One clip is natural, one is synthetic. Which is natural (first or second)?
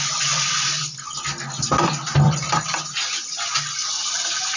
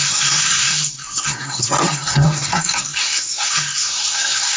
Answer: first